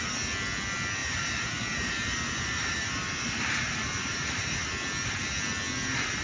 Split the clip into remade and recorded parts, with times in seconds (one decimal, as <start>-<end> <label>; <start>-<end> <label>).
0.0-1.0 recorded; 1.0-4.7 remade; 4.7-6.2 recorded